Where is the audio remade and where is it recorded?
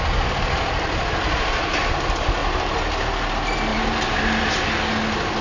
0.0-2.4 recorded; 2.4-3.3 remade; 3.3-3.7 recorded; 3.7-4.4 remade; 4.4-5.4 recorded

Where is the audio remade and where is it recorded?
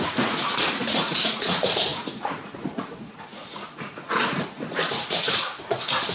0.0-6.1 remade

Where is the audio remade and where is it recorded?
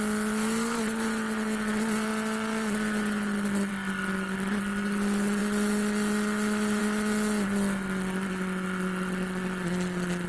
0.0-10.3 recorded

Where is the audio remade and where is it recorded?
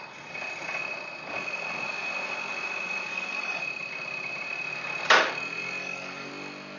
0.0-3.1 recorded; 3.1-3.6 remade; 3.6-5.8 recorded; 5.8-6.3 remade; 6.3-6.8 recorded